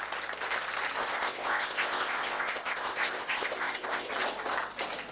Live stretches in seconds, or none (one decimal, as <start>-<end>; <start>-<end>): 0.0-1.0; 4.1-5.1